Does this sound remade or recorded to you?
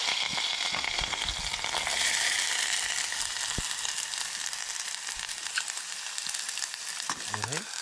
recorded